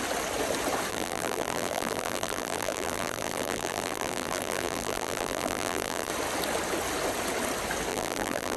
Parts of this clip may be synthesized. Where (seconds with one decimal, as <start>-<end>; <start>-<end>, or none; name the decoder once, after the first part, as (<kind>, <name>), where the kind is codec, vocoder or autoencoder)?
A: 0.9-6.1 (vocoder, BigVGAN v2); 7.9-8.6